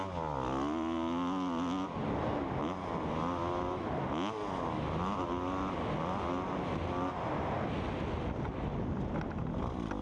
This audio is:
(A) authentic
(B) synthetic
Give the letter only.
A